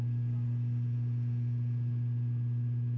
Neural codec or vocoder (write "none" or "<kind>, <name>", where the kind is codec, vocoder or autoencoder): none